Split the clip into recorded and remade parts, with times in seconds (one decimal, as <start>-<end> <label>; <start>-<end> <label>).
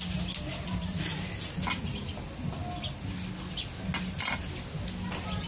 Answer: 0.0-5.5 recorded